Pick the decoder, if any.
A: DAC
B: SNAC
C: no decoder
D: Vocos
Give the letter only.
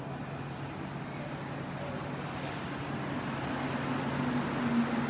C